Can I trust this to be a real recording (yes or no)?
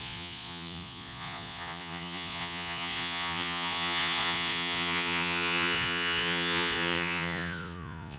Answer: no